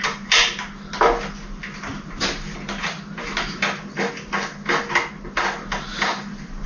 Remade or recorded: recorded